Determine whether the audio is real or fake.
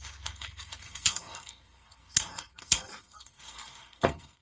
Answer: fake